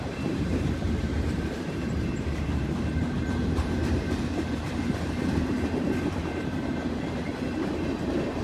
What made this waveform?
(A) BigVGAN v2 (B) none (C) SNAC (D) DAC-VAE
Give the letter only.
A